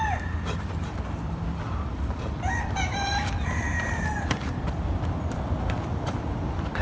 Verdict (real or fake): fake